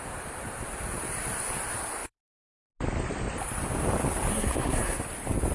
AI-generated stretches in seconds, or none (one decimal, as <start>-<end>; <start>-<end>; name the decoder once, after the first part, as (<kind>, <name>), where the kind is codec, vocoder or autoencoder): 4.3-5.0 (codec, SNAC)